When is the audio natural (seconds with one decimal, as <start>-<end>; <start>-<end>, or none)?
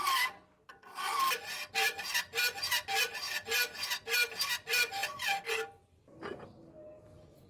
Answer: 0.0-7.5